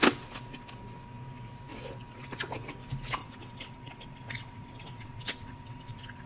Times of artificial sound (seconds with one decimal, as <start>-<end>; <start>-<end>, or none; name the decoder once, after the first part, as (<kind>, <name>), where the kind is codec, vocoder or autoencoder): 3.2-6.3 (vocoder, WaveNeXt)